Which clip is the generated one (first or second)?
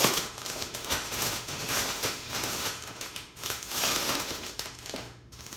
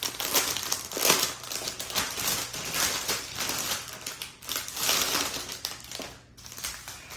first